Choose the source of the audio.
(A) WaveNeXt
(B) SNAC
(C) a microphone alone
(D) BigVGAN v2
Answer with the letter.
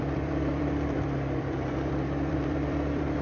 D